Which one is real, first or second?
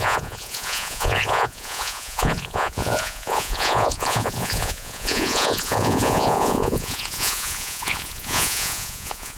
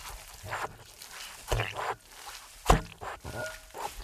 second